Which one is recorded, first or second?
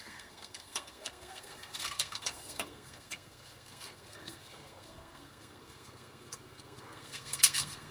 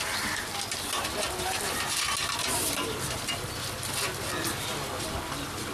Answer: second